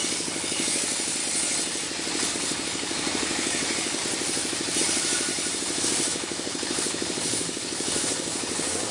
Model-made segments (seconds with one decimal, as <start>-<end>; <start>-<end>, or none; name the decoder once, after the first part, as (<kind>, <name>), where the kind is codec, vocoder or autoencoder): 0.0-1.2 (codec, DAC); 2.3-4.0; 4.8-5.3; 5.8-8.9